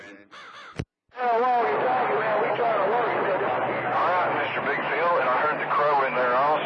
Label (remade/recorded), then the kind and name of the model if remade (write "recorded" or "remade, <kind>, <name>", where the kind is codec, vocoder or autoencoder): recorded